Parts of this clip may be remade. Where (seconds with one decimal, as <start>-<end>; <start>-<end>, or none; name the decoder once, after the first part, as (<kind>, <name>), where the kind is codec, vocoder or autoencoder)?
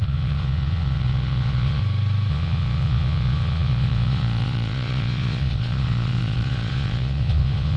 0.0-1.8 (vocoder, Vocos); 2.3-7.8